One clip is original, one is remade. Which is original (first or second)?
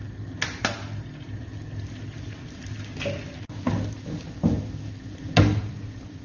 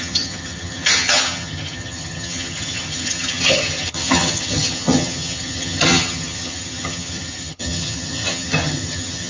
first